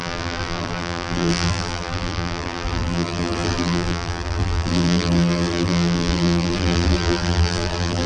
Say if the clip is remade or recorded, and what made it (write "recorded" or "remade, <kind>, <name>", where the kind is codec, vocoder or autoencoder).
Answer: remade, vocoder, BigVGAN v2